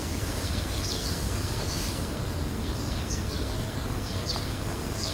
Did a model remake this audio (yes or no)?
yes